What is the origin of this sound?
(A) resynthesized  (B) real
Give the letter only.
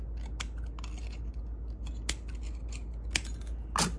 B